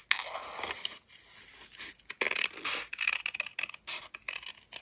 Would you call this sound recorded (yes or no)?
yes